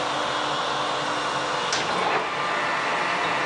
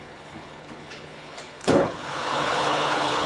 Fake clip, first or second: second